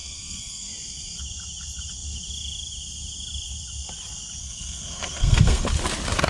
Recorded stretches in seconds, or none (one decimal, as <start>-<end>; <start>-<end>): 0.7-4.4; 5.7-6.3